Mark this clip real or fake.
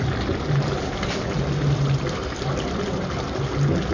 real